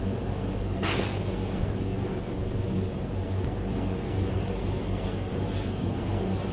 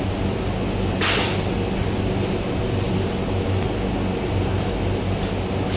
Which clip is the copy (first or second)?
first